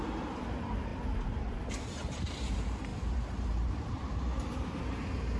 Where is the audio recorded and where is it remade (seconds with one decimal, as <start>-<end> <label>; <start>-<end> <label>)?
0.0-5.4 remade

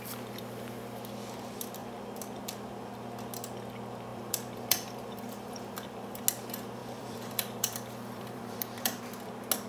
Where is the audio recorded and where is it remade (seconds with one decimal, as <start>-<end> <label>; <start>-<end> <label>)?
0.0-4.1 recorded; 4.1-6.2 remade; 6.2-6.8 recorded; 6.8-9.0 remade; 9.0-9.7 recorded